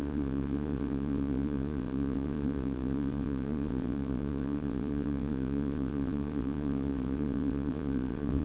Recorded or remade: remade